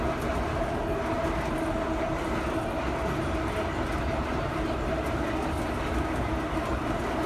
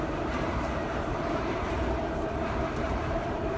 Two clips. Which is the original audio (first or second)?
first